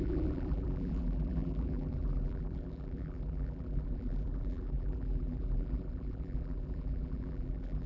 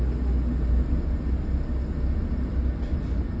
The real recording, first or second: second